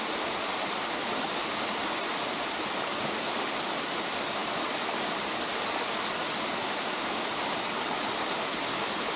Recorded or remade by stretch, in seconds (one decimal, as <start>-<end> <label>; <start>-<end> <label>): 0.0-9.2 recorded